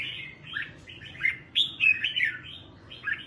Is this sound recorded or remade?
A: remade